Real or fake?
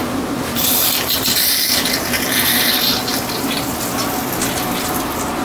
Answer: real